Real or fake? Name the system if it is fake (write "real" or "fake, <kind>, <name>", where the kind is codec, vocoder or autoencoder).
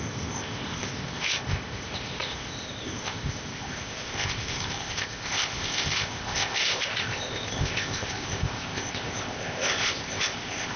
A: fake, codec, ZipCodec